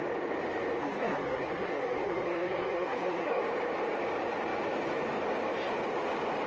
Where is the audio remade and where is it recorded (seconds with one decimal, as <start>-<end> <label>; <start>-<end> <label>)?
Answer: 0.0-0.8 recorded; 0.8-3.4 remade; 3.4-6.5 recorded